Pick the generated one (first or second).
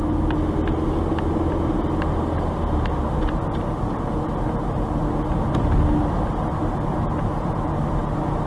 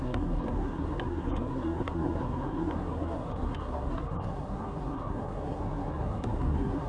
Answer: second